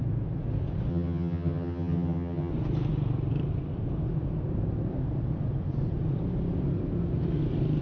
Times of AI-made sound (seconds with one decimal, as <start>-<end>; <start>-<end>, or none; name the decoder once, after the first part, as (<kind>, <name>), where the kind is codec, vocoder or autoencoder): 0.9-2.5 (vocoder, HiFi-GAN)